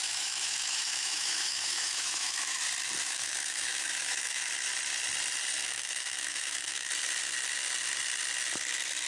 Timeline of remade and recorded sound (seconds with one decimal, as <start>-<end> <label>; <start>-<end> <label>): 0.0-2.6 remade; 2.6-3.0 recorded; 3.0-4.5 remade; 4.5-5.6 recorded; 5.6-6.9 remade; 6.9-9.1 recorded